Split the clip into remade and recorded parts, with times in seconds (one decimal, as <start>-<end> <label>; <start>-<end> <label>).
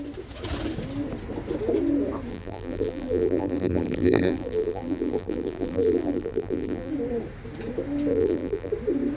0.0-2.3 recorded; 2.3-6.9 remade; 6.9-8.1 recorded; 8.1-8.7 remade; 8.7-9.2 recorded